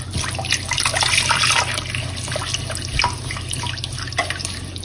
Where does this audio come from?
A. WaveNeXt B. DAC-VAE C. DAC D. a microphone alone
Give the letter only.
D